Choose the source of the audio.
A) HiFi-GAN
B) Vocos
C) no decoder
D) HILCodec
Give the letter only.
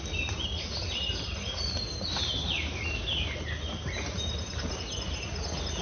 C